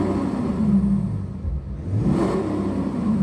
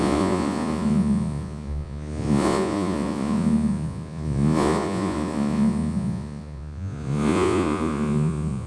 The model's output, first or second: second